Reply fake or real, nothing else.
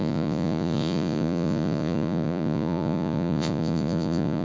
fake